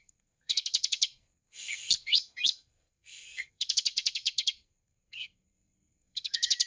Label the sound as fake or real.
fake